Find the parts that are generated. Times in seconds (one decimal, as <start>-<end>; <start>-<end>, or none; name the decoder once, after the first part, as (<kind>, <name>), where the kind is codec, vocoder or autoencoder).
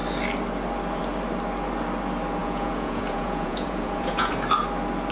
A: 2.4-4.3 (vocoder, Vocos)